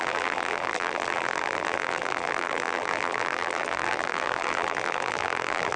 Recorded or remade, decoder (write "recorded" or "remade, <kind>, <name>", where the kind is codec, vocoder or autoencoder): remade, vocoder, BigVGAN v2